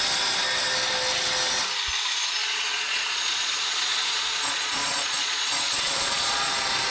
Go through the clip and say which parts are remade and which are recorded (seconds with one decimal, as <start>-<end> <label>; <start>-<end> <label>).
0.0-2.4 recorded; 2.4-6.5 remade; 6.5-6.9 recorded